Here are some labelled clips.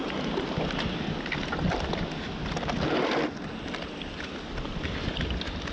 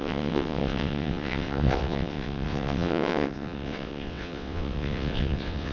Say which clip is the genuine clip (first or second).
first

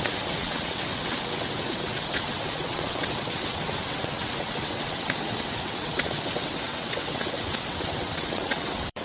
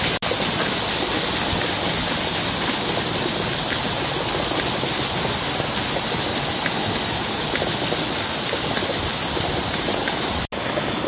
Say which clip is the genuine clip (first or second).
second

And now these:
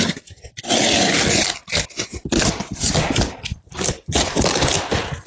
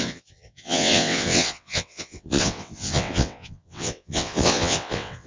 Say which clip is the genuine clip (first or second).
first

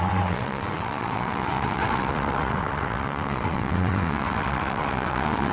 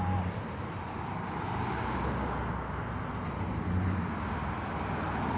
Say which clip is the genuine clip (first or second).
second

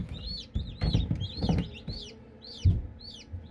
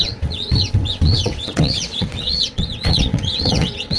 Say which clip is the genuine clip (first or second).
first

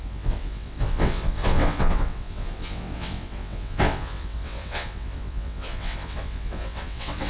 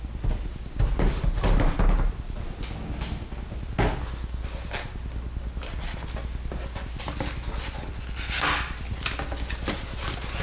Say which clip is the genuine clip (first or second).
second